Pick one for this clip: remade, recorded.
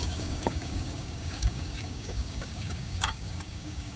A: remade